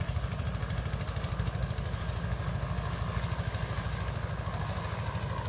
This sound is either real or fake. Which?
real